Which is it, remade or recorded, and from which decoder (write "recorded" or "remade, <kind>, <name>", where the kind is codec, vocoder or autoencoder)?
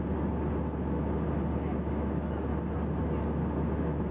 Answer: recorded